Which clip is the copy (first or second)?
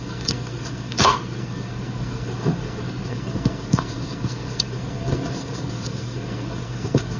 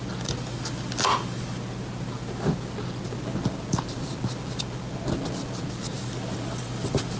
first